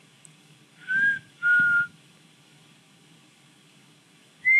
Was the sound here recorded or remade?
remade